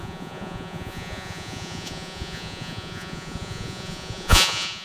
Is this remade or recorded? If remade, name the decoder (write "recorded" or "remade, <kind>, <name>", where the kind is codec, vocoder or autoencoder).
remade, vocoder, Vocos